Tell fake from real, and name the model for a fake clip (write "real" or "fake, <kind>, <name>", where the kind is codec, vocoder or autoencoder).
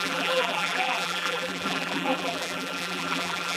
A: fake, vocoder, BigVGAN v2